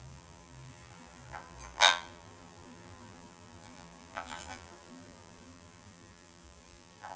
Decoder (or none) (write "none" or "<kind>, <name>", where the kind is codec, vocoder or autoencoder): vocoder, BigVGAN v2